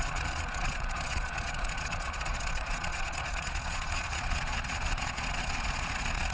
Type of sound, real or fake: fake